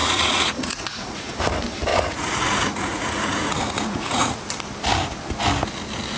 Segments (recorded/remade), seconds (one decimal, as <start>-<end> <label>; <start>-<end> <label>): 0.0-1.3 remade; 1.3-1.9 recorded; 1.9-4.4 remade; 4.4-6.2 recorded